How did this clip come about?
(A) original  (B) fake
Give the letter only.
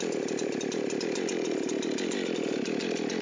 A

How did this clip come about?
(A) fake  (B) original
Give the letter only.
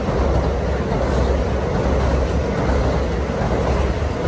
B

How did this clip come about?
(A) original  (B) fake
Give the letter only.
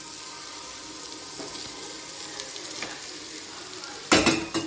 A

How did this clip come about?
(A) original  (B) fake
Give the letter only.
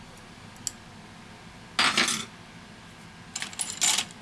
A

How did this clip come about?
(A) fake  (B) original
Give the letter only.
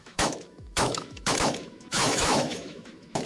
A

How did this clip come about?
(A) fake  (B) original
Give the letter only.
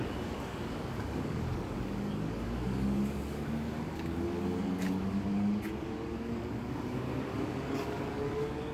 A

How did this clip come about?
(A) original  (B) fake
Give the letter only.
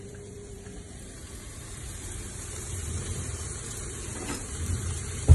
B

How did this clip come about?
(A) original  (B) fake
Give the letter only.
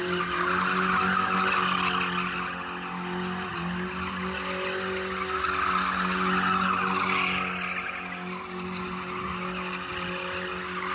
A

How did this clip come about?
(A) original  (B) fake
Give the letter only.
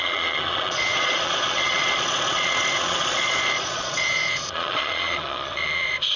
B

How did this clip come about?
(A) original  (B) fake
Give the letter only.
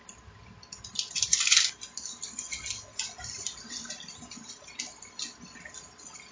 A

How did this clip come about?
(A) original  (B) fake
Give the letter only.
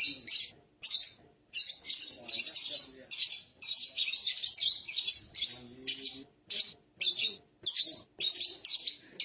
A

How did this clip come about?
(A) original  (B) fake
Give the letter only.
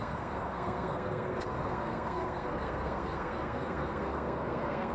B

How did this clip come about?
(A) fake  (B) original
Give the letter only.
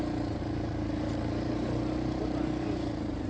A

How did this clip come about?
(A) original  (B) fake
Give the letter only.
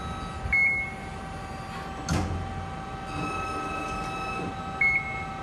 A